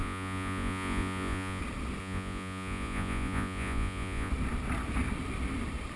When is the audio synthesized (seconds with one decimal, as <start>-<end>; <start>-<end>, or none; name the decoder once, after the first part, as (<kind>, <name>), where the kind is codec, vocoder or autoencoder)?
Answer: 0.0-1.6 (vocoder, Vocos); 2.0-4.3